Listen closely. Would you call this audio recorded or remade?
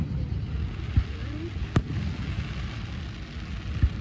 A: recorded